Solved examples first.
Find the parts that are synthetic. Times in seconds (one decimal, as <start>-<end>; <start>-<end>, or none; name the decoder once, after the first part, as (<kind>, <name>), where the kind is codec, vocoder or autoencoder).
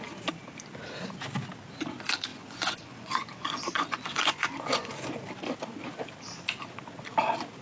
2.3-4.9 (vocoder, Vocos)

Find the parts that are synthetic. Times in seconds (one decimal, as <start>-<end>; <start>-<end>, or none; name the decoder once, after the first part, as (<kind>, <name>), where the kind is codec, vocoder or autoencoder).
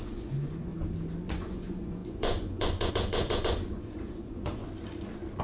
0.0-0.7 (vocoder, Vocos); 1.3-4.6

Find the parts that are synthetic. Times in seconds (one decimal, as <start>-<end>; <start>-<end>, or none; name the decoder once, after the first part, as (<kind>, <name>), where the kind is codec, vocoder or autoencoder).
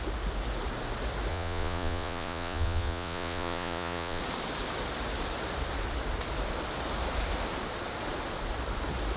1.3-4.2 (vocoder, Vocos)